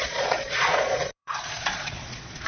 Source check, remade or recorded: remade